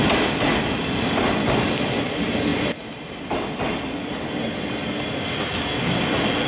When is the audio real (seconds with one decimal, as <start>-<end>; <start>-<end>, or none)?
0.0-6.5